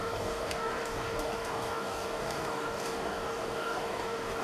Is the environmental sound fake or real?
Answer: fake